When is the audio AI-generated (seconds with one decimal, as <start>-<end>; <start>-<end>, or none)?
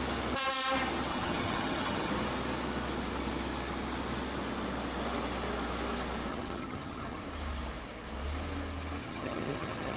1.1-2.1; 6.3-7.2; 9.0-10.0